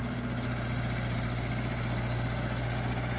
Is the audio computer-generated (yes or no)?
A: no